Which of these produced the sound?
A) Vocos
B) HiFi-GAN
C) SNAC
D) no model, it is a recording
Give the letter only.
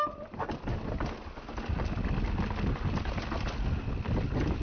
D